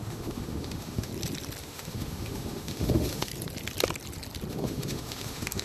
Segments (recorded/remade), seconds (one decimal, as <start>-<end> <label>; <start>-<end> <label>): 0.0-1.1 remade; 1.1-1.6 recorded; 1.6-3.3 remade; 3.3-4.5 recorded; 4.5-5.6 remade